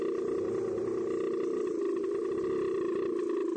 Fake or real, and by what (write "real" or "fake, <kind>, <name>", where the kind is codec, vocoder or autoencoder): real